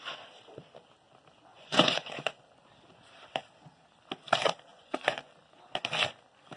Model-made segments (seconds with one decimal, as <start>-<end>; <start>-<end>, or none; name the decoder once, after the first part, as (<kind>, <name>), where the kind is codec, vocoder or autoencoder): 1.5-2.4 (vocoder, Vocos); 4.7-5.3